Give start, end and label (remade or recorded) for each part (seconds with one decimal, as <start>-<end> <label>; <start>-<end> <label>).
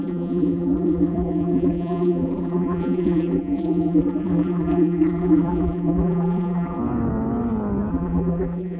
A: 0.0-6.8 remade; 6.8-7.9 recorded; 7.9-8.8 remade